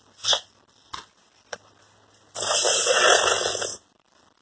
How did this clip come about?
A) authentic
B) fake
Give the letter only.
A